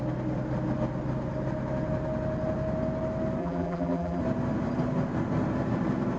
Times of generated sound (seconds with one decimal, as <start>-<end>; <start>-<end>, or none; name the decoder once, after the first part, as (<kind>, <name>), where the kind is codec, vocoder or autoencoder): 3.4-4.2 (vocoder, BigVGAN v2)